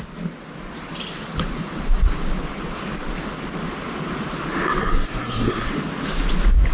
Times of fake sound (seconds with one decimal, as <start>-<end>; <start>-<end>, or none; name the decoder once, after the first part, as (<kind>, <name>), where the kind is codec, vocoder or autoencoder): 4.8-5.7 (codec, SNAC)